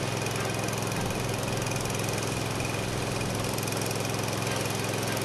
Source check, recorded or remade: recorded